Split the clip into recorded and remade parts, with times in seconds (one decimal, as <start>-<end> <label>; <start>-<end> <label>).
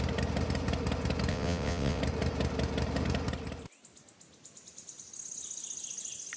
0.0-1.3 recorded; 1.3-2.0 remade; 2.0-6.4 recorded